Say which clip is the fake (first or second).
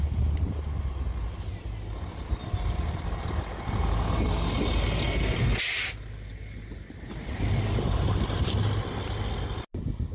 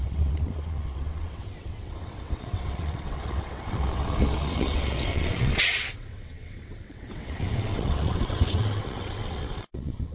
second